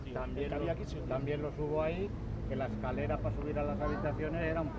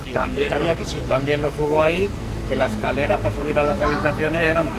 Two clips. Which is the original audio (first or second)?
first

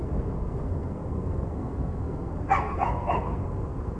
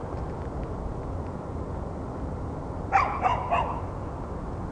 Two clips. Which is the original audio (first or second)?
second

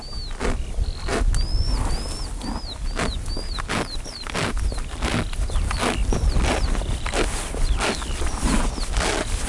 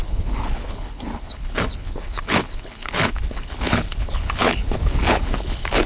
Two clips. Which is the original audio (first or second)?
first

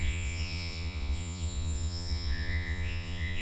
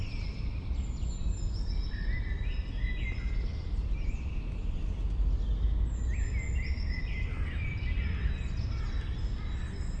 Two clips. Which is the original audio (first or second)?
second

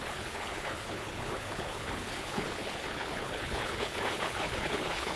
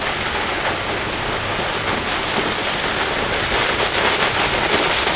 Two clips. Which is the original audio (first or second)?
second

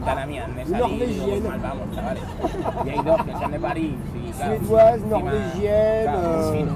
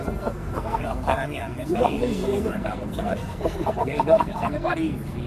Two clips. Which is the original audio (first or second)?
first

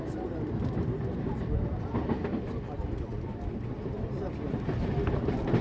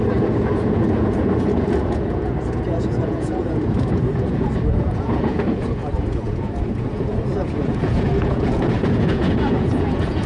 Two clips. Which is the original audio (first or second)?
first